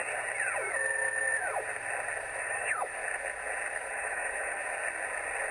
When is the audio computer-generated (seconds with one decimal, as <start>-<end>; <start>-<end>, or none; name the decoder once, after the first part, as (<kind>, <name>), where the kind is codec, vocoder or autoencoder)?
2.2-3.0 (autoencoder, DAC-VAE); 3.7-4.6